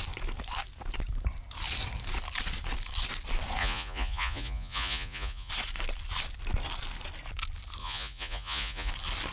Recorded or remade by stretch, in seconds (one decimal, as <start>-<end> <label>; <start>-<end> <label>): 0.0-3.6 recorded; 3.6-5.5 remade; 5.5-7.8 recorded; 7.8-8.9 remade; 8.9-9.3 recorded